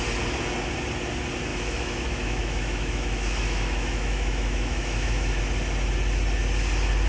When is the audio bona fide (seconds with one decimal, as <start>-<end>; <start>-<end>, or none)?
0.0-1.5; 5.4-7.1